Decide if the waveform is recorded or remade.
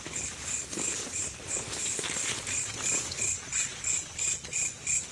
recorded